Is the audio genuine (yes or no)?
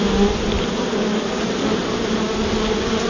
yes